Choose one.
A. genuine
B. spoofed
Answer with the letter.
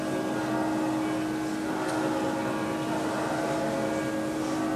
A